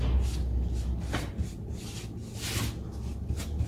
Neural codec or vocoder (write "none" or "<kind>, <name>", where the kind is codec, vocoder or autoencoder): none